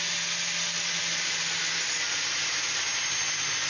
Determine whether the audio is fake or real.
real